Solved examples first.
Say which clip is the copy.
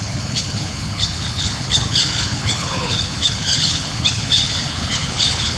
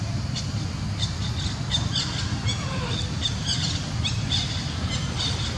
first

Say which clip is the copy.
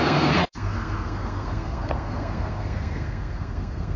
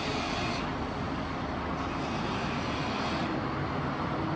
first